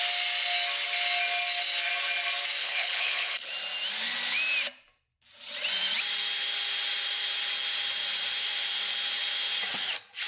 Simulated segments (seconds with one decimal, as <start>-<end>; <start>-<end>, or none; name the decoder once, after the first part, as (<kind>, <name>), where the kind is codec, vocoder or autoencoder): 2.6-3.5 (codec, HILCodec)